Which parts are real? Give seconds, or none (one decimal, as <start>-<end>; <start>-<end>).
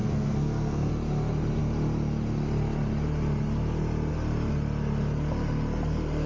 0.9-6.3